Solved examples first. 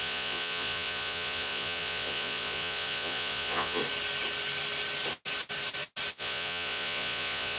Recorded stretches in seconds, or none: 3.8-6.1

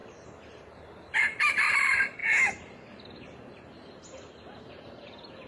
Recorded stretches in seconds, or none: 0.0-1.2; 2.2-4.7

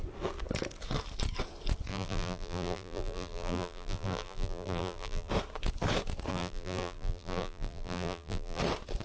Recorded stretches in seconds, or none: 0.0-1.9; 5.3-6.3; 8.6-9.0

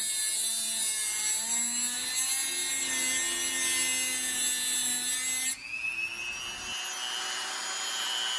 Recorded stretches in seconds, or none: 0.0-8.4